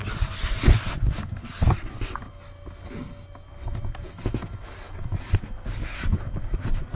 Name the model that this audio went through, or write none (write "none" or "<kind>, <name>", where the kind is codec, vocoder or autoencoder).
none